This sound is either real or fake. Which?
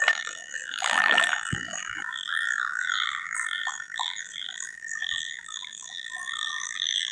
fake